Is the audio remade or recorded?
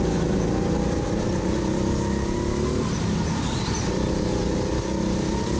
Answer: recorded